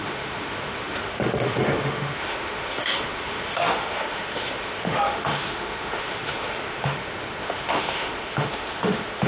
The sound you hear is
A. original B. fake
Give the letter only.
B